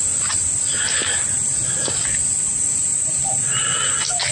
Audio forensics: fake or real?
real